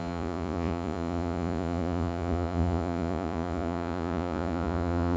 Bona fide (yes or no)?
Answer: no